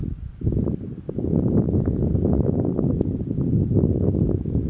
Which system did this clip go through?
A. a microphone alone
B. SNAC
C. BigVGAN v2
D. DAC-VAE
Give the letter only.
C